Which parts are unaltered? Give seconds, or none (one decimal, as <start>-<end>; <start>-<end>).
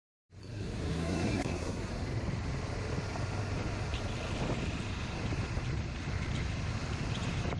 0.0-0.4; 1.9-7.6